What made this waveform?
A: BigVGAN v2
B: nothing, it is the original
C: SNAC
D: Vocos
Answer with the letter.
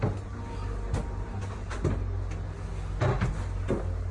B